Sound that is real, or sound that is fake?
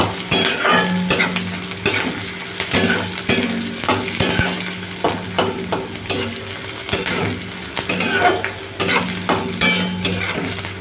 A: real